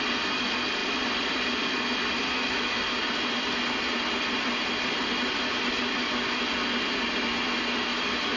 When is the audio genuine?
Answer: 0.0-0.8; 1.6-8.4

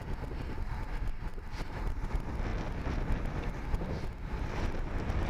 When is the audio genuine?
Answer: 0.0-1.3; 2.1-5.3